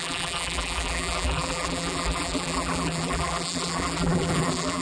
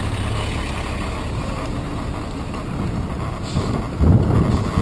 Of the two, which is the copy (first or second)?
first